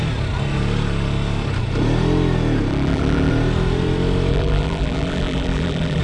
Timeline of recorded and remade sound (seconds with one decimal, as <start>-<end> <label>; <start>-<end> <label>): 0.0-2.7 recorded; 2.7-3.3 remade; 3.3-4.3 recorded; 4.3-6.0 remade